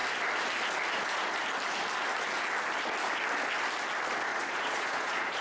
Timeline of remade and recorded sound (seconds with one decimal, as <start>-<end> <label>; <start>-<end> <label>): 0.0-4.3 recorded; 4.3-5.4 remade